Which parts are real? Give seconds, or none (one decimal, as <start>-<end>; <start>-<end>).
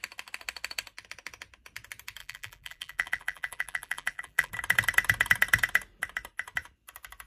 0.0-2.2; 4.5-7.3